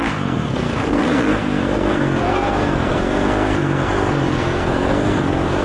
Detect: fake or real fake